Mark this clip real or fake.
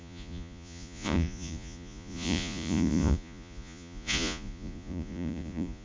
fake